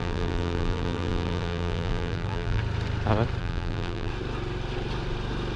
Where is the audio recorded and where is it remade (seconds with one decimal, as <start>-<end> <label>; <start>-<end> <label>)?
0.0-2.6 remade; 2.6-3.4 recorded; 3.4-4.1 remade; 4.1-5.6 recorded